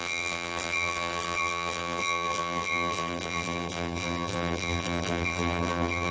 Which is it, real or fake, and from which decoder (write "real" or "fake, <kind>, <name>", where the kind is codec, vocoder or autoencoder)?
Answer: fake, vocoder, BigVGAN v2